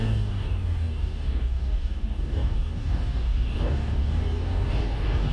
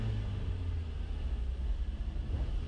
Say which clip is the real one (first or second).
second